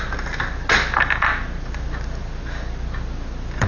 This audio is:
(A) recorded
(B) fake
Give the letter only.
A